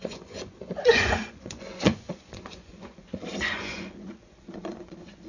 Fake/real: fake